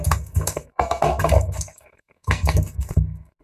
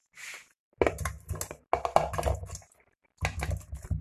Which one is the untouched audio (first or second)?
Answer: second